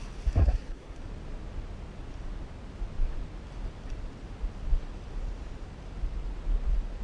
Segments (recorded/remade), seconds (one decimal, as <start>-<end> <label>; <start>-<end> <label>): 0.0-0.4 recorded; 0.4-1.0 remade; 1.0-7.0 recorded